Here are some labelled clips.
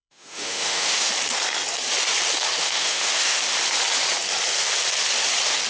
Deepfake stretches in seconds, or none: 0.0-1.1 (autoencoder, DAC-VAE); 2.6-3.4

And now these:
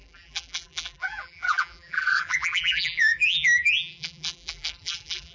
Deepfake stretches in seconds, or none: 0.0-5.3 (vocoder, BigVGAN v2)

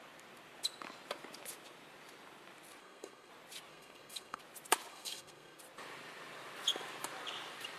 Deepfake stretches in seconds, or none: 2.8-3.3 (codec, SNAC); 3.7-4.4; 4.9-5.6

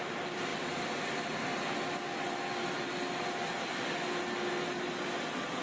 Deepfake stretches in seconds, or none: none

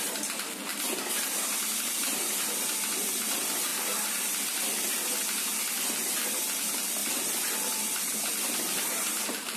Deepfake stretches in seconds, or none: 7.0-9.6 (vocoder, BigVGAN v2)

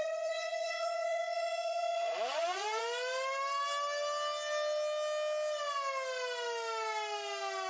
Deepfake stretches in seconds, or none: 0.0-2.8 (vocoder, Vocos)